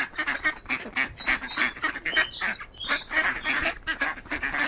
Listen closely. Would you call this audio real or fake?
real